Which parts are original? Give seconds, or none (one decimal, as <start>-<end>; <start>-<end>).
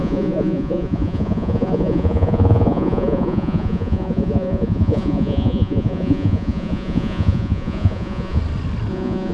8.4-8.9